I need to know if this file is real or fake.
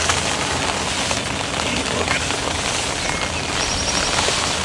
real